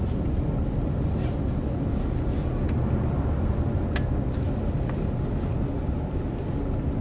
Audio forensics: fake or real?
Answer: real